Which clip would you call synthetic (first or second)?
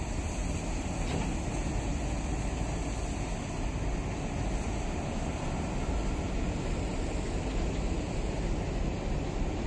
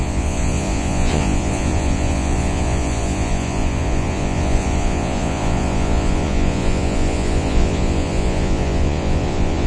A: second